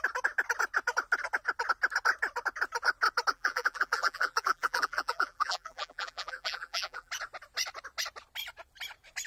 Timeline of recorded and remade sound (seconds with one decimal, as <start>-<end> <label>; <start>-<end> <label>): 0.0-3.3 recorded; 3.3-7.1 remade; 7.1-9.3 recorded